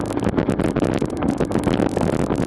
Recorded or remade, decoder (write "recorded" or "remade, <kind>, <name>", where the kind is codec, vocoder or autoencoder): recorded